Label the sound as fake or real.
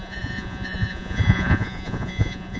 fake